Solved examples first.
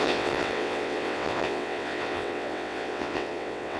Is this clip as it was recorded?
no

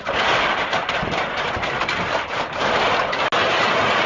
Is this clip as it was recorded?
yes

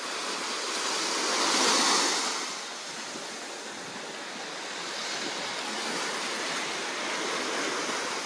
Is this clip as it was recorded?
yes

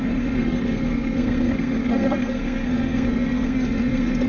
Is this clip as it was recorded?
no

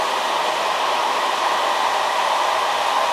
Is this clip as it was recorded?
no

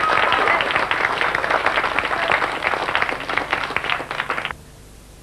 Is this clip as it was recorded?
yes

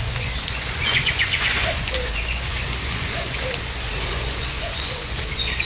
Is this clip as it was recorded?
no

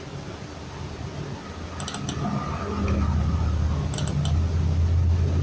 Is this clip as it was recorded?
yes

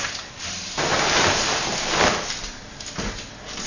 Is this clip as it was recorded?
yes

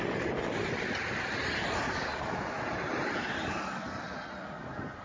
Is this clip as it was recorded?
yes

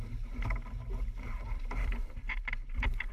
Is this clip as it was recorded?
no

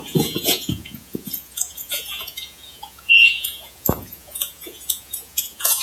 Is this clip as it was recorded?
no